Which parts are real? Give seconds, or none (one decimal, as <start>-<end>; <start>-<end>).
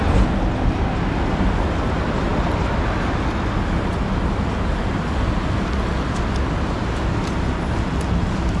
0.0-8.6